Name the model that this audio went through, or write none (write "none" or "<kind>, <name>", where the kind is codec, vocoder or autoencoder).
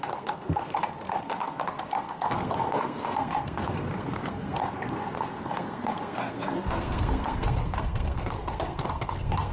codec, SNAC